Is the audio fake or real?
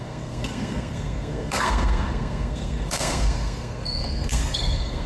fake